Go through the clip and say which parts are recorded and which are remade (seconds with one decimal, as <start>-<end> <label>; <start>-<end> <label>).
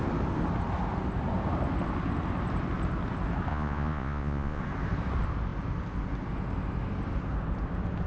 0.0-3.5 recorded; 3.5-4.6 remade; 4.6-8.1 recorded